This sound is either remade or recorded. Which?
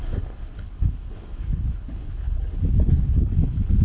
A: remade